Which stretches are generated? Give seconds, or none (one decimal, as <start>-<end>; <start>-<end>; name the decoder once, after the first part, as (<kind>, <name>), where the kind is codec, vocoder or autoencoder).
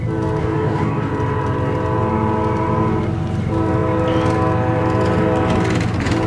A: 0.4-1.1 (codec, DAC)